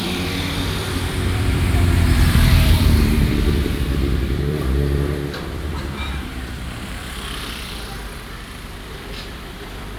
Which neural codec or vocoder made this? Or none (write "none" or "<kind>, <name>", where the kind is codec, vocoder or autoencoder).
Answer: vocoder, BigVGAN v2